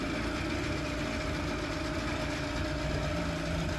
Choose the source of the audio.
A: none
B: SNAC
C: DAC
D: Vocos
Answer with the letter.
A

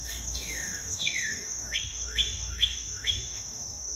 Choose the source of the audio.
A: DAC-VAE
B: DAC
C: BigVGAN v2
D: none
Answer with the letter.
B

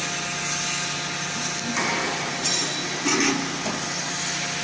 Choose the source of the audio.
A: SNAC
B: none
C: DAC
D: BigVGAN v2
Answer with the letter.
B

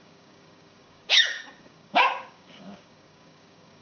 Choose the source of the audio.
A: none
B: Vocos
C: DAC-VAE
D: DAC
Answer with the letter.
D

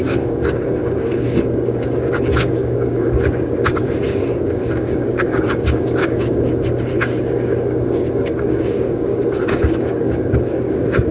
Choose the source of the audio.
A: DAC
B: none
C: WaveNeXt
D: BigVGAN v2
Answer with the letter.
A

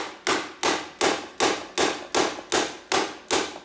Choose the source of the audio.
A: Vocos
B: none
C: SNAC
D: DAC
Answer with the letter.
B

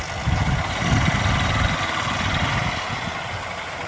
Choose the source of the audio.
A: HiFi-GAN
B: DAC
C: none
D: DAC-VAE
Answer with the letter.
C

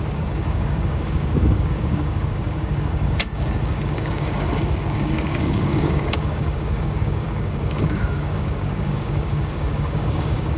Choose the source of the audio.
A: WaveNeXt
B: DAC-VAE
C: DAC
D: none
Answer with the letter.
C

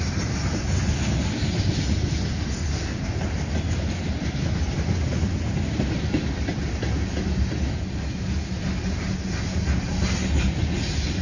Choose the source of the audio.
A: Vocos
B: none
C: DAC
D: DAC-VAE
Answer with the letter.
B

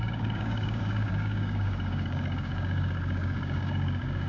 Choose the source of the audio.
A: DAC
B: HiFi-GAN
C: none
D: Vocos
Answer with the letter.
A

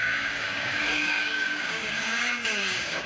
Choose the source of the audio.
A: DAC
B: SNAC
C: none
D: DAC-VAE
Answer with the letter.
A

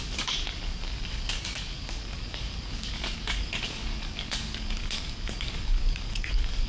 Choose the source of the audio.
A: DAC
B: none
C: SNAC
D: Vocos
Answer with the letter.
A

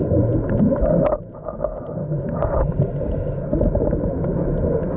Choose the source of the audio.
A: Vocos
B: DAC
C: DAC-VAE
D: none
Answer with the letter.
D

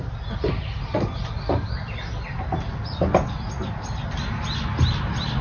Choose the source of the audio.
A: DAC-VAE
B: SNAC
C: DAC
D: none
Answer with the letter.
D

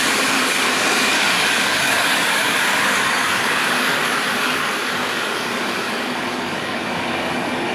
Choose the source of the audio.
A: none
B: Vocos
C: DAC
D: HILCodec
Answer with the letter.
C